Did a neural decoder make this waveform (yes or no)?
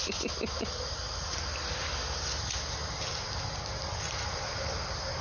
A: no